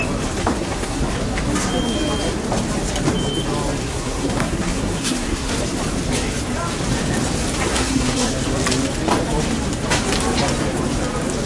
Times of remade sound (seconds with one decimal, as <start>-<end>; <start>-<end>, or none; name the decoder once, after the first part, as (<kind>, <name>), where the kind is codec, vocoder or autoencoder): 0.4-1.0 (codec, SNAC); 3.8-5.5; 7.7-8.3